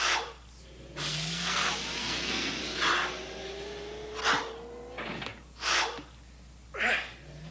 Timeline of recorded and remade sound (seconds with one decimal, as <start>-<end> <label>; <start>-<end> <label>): 0.0-1.1 recorded; 1.1-1.6 remade; 1.6-2.0 recorded; 2.0-2.6 remade; 2.6-7.5 recorded